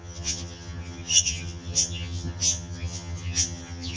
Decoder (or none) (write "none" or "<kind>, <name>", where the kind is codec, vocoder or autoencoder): vocoder, HiFi-GAN